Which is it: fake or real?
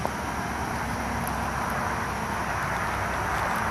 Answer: real